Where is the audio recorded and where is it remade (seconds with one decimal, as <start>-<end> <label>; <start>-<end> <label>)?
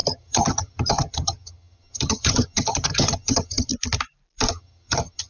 0.0-3.7 remade; 3.7-4.5 recorded; 4.5-5.3 remade